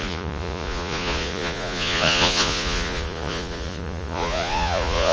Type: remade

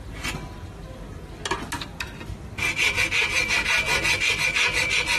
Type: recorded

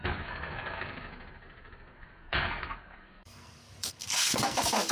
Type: remade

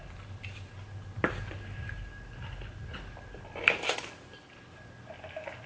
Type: recorded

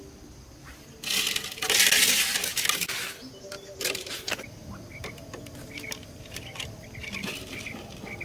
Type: recorded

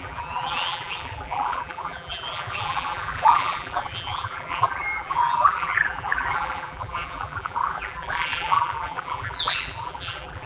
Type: remade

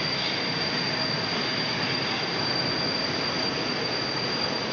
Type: recorded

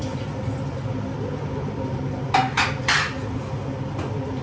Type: recorded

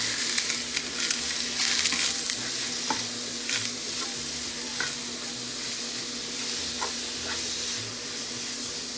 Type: recorded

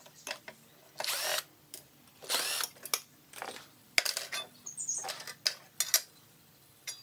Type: recorded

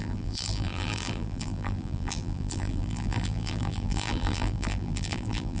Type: remade